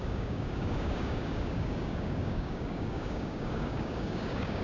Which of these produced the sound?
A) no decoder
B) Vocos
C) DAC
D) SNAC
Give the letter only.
C